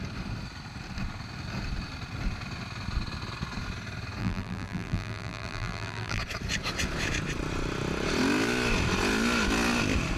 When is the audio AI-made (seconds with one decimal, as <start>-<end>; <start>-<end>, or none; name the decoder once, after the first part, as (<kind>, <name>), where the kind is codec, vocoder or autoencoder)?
4.2-6.2 (vocoder, BigVGAN v2)